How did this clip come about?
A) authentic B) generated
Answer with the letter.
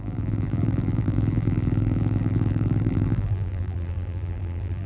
B